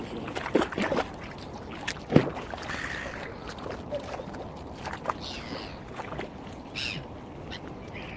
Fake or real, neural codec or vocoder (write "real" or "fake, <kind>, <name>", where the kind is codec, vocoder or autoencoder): real